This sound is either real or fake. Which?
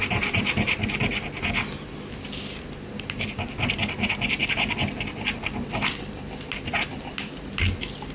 real